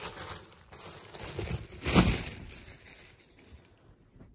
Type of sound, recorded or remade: recorded